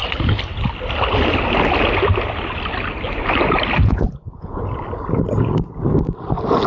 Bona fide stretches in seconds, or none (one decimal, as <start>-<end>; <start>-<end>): 0.0-3.8; 4.6-6.7

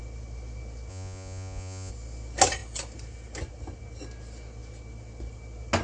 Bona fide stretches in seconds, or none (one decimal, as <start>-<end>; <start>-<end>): 0.0-0.9; 1.9-5.8